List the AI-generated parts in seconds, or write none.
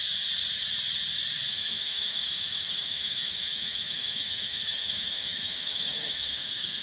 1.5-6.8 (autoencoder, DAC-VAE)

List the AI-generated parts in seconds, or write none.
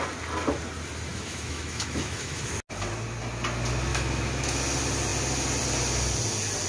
1.1-2.5 (autoencoder, DAC-VAE); 3.9-4.6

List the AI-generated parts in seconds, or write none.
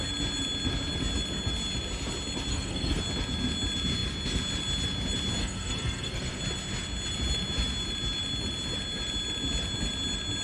2.5-3.0 (codec, SNAC); 5.4-6.4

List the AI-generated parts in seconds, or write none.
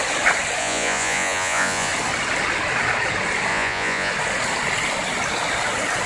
0.6-1.9 (vocoder, Vocos); 3.5-4.1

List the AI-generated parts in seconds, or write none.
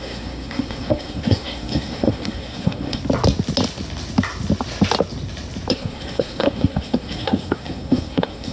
0.0-3.0 (codec, SNAC); 5.7-8.5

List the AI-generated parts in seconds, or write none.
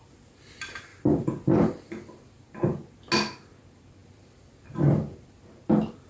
none